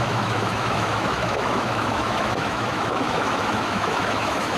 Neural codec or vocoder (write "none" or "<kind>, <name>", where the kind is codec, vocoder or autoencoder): autoencoder, DAC-VAE